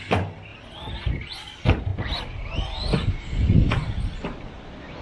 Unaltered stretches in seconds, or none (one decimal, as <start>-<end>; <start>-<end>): 0.0-5.0